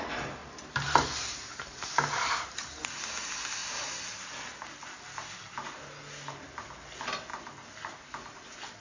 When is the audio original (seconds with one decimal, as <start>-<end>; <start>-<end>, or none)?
0.0-0.4; 2.6-3.6; 4.1-8.8